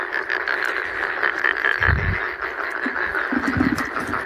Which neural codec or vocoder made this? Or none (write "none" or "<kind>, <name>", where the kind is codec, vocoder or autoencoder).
none